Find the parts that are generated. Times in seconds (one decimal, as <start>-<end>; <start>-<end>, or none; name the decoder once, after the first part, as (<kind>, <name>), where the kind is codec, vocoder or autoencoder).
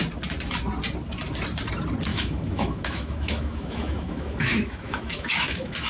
2.1-5.9 (autoencoder, DAC-VAE)